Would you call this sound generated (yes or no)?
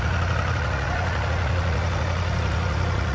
yes